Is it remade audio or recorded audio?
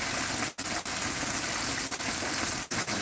recorded